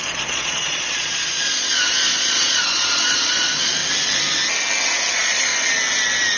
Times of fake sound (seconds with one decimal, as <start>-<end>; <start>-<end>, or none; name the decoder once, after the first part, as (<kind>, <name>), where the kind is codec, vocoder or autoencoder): 0.0-3.8 (vocoder, Vocos); 5.1-5.5